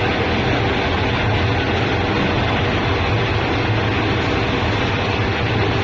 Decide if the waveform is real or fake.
real